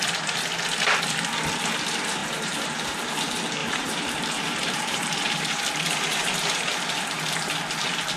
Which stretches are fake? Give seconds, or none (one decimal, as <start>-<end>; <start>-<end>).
2.2-3.1; 3.6-6.8